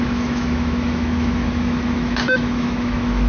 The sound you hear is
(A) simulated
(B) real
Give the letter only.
A